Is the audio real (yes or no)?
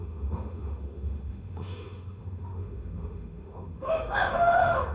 no